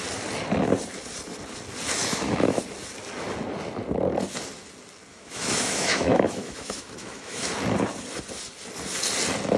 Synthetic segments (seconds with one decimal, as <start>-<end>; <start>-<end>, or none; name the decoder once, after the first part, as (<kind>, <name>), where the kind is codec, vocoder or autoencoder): 2.0-2.6 (autoencoder, DAC-VAE); 5.1-7.5